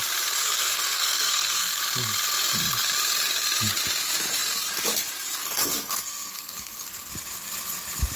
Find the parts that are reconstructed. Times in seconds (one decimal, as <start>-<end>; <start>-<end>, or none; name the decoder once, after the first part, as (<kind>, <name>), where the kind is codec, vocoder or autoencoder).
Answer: 0.4-1.8 (codec, SNAC); 5.4-7.1